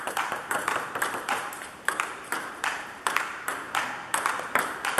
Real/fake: fake